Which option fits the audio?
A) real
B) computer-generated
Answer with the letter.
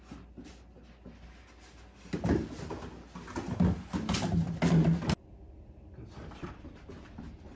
A